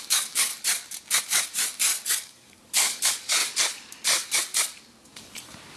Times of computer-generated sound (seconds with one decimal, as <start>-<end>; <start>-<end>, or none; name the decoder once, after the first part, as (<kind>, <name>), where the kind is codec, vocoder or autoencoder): 0.0-0.5 (codec, DAC); 1.2-1.6; 2.2-3.4; 5.2-5.8